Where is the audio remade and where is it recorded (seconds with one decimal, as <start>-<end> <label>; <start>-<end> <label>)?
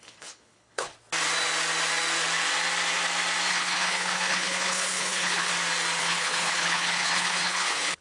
0.0-0.9 remade; 0.9-3.5 recorded; 3.5-5.5 remade; 5.5-6.0 recorded; 6.0-8.0 remade